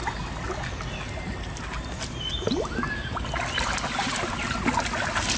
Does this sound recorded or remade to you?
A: recorded